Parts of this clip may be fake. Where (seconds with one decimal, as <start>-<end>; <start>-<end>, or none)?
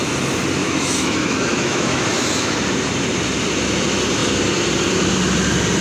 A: 0.6-2.6